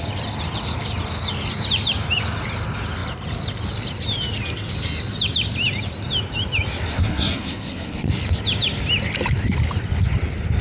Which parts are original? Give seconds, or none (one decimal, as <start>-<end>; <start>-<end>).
0.0-6.9; 8.1-10.6